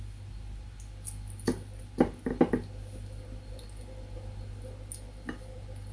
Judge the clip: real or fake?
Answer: real